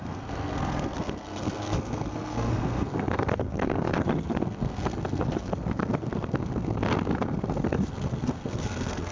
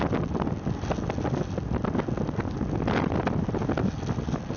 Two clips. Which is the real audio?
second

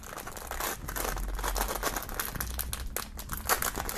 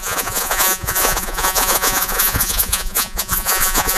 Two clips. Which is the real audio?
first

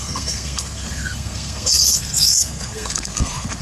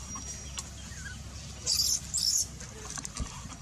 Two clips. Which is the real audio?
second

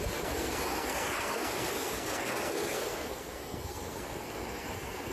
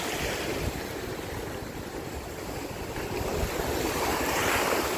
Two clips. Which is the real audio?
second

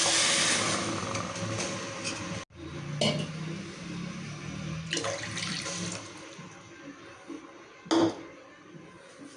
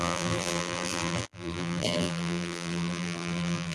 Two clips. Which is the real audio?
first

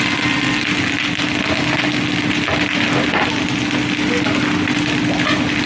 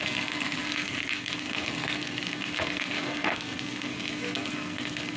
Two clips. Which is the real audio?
first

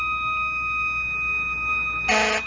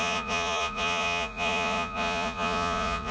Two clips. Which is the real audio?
first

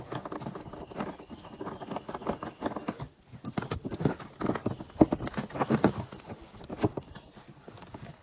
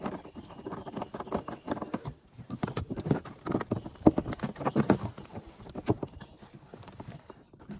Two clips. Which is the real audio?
first